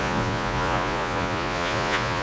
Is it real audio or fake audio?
fake